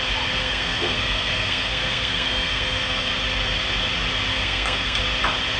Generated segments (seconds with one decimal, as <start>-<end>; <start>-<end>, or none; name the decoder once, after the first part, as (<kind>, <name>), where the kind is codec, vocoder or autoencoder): 0.4-3.1 (codec, SNAC); 4.3-5.0